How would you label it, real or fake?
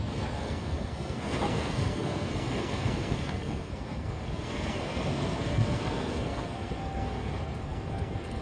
fake